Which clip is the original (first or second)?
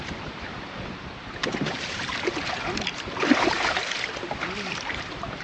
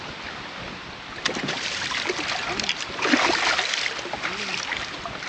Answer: second